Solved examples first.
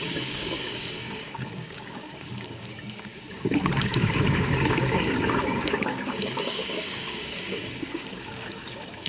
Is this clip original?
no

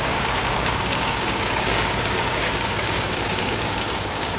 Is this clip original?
no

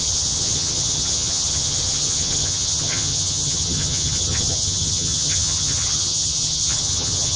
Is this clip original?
no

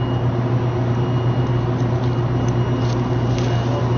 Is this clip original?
yes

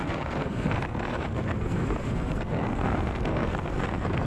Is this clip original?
no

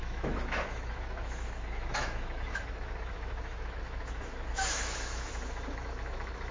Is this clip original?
no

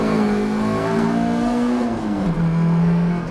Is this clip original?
no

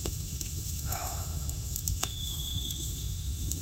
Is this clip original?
no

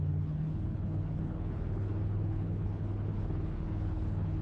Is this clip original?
no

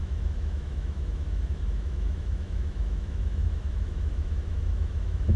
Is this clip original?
no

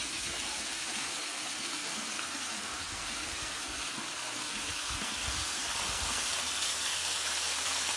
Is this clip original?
no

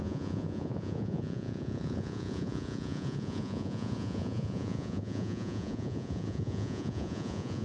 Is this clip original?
no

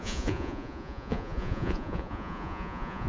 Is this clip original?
no